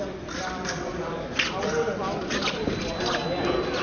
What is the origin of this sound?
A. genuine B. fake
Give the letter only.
A